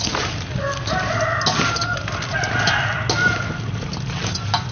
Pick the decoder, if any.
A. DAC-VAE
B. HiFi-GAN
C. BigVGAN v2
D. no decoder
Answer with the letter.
D